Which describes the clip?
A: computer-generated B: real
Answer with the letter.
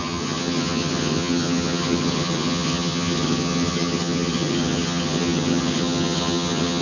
A